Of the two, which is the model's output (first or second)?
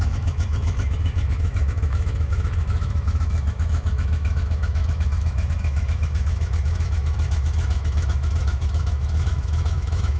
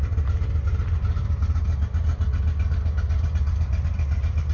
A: first